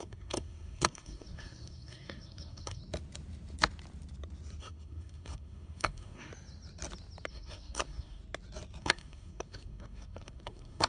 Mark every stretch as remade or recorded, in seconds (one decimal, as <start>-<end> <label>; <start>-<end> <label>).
0.0-2.8 remade; 2.8-4.6 recorded; 4.6-6.3 remade; 6.3-7.3 recorded; 7.3-8.2 remade; 8.2-8.8 recorded; 8.8-10.9 remade